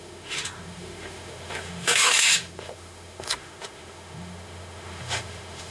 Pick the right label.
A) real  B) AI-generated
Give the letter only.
B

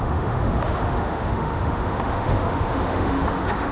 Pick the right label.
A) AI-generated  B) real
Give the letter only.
A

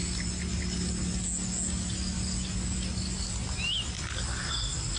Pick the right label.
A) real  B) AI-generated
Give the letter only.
A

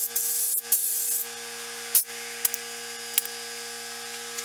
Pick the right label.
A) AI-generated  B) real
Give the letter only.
B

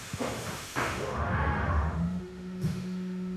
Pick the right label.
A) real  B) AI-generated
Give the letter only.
B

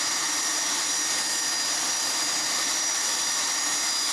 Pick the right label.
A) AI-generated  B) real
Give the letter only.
B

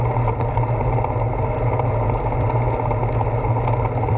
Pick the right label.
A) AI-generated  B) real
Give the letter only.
B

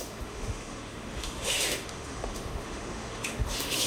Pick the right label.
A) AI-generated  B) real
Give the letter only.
A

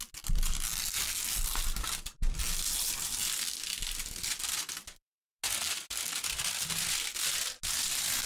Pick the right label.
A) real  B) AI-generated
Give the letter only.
A